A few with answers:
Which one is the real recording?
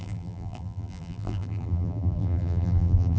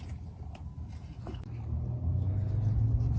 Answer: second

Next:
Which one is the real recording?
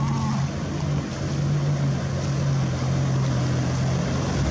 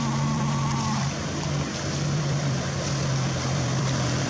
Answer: first